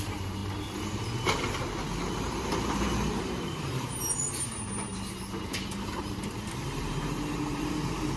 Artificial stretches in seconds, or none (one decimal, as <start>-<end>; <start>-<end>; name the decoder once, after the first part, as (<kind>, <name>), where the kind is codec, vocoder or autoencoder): 0.0-0.4 (vocoder, BigVGAN v2); 2.2-8.2